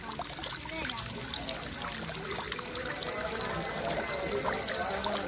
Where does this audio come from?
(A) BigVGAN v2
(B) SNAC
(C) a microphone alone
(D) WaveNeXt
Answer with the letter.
C